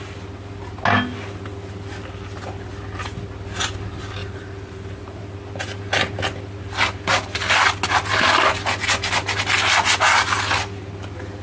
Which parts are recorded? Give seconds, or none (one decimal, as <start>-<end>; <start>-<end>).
0.0-4.2; 5.2-11.4